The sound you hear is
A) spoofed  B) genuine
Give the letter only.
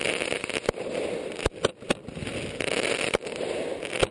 B